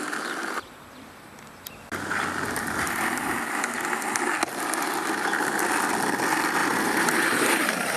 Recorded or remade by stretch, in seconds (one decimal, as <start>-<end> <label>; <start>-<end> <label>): 0.0-6.6 recorded; 6.6-8.0 remade